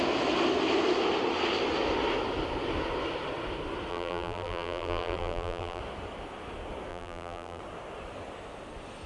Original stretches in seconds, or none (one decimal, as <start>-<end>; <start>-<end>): 0.0-3.9; 5.8-6.9; 7.6-9.1